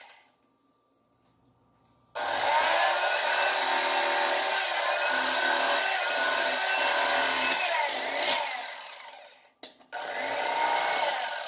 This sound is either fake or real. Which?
real